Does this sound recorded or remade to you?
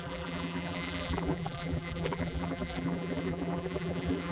remade